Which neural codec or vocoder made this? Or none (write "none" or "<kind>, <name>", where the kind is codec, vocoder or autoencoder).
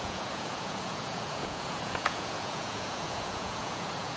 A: vocoder, Vocos